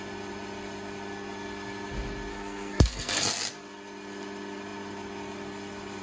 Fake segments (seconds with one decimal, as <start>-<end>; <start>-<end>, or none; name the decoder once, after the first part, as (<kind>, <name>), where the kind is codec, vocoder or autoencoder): 2.3-3.2 (codec, SNAC)